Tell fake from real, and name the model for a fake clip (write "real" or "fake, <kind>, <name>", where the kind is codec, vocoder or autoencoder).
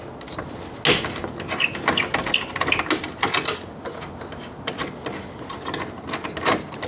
real